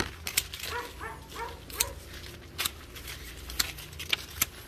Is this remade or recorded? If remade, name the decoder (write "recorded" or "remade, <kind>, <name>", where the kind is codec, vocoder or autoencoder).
recorded